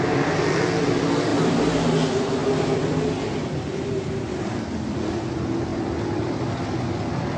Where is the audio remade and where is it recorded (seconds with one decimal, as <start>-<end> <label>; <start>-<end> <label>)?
0.0-7.4 recorded